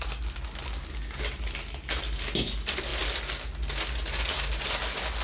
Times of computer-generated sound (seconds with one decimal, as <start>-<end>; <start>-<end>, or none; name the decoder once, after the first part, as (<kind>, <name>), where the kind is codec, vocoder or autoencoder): none